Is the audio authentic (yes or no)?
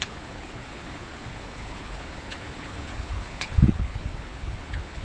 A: no